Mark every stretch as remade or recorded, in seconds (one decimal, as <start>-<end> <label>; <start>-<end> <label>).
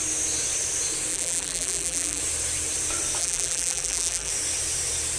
0.0-1.1 recorded; 1.1-2.2 remade; 2.2-3.2 recorded; 3.2-4.3 remade; 4.3-5.2 recorded